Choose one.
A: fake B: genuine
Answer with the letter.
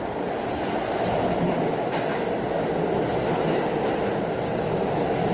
B